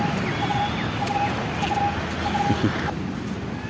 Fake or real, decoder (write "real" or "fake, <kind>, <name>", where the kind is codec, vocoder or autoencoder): real